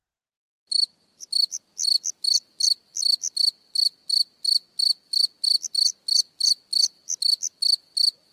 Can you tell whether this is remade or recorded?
recorded